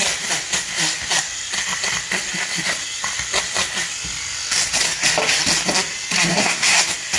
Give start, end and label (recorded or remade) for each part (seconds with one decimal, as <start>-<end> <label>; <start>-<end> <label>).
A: 0.0-6.3 recorded; 6.3-6.8 remade; 6.8-7.2 recorded